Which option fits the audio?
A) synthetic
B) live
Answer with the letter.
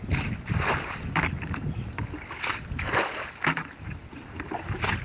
B